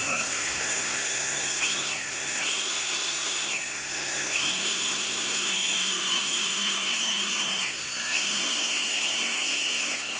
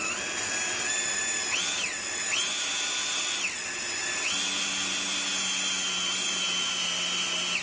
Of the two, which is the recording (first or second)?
second